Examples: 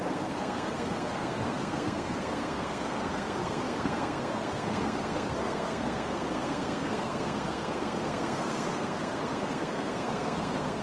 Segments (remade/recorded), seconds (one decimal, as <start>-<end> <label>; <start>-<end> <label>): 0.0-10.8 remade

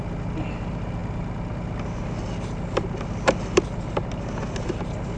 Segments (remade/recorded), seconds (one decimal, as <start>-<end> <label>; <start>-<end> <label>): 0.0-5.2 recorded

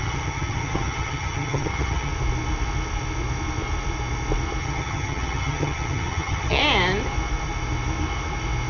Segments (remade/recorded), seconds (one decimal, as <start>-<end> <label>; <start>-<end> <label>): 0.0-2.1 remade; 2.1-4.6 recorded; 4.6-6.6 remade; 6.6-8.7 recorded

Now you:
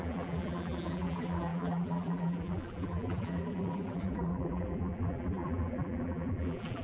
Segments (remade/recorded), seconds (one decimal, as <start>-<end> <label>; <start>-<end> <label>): 0.0-6.8 remade

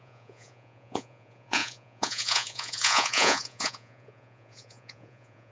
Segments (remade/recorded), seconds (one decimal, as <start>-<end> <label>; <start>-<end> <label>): 0.0-5.5 remade

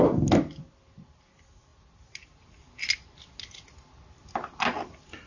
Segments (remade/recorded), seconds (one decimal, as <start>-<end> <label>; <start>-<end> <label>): 0.0-5.3 recorded

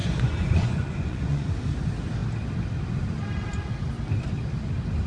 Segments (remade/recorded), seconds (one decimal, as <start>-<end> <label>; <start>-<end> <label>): 0.0-1.5 remade; 1.5-5.1 recorded